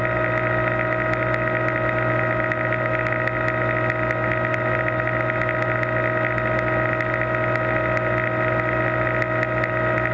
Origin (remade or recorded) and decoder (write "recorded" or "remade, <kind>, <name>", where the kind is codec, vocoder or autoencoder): recorded